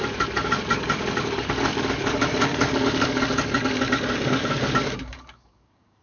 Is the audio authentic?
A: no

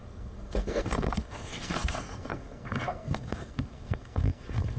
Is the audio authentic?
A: no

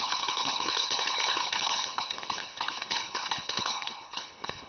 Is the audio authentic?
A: no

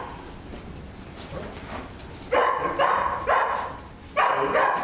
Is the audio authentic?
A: yes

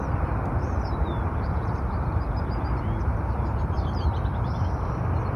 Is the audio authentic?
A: no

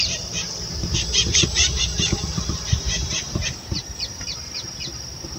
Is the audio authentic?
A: no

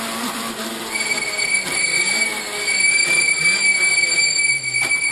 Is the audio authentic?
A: no